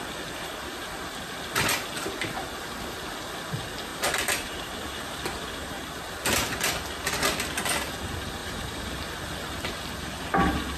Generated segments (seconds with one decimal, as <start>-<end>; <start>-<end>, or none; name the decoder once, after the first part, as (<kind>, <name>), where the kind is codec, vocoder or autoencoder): 3.9-5.8 (vocoder, BigVGAN v2); 8.4-8.9